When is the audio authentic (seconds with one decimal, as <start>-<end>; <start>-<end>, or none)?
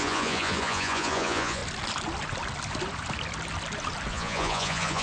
1.6-4.1